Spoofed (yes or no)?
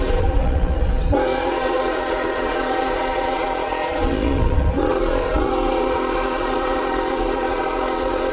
yes